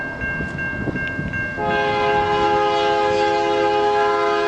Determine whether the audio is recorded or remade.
recorded